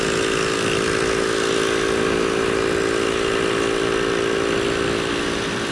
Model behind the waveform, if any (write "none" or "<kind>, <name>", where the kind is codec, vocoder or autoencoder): none